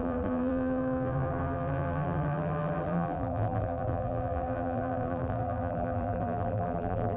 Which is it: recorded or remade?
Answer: remade